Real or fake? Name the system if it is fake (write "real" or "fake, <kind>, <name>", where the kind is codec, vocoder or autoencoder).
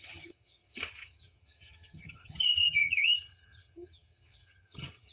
fake, vocoder, HiFi-GAN